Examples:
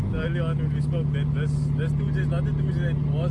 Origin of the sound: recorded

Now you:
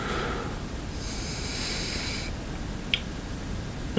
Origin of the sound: recorded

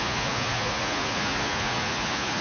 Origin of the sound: remade